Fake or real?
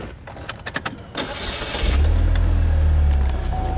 real